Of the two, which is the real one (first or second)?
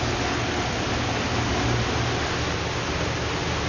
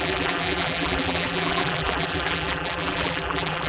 first